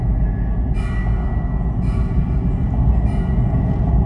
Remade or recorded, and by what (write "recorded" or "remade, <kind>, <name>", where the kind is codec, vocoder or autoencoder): recorded